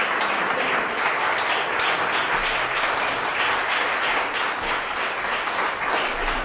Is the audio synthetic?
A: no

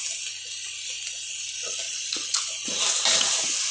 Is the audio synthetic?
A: no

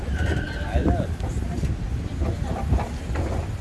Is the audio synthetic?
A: no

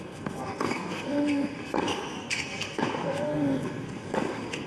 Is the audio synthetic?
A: yes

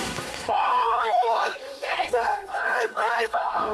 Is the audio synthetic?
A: yes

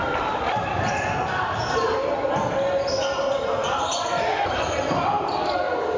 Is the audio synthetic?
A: no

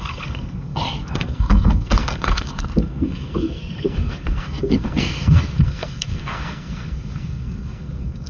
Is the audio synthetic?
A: yes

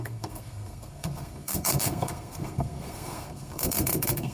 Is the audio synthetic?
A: yes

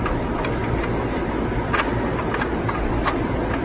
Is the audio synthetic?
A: no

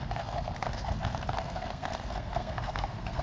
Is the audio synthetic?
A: yes